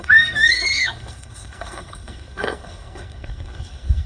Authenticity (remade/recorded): remade